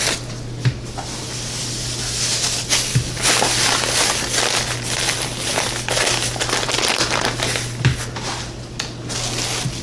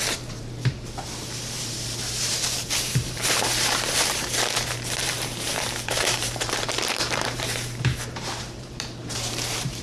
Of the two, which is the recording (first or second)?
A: first